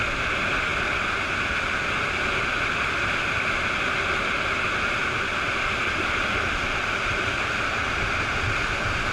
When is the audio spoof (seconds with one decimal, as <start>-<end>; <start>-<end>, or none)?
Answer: none